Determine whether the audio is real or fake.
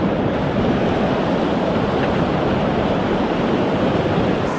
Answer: real